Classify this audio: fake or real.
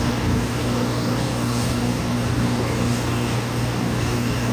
fake